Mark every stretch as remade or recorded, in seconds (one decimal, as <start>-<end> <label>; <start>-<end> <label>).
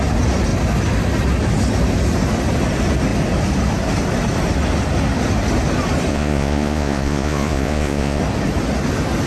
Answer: 0.0-6.1 recorded; 6.1-8.2 remade; 8.2-9.3 recorded